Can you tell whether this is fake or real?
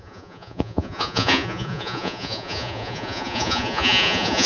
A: fake